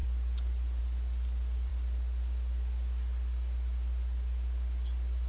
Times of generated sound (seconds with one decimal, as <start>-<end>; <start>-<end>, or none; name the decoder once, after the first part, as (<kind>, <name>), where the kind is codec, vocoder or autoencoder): none